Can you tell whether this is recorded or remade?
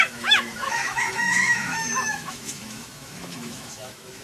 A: remade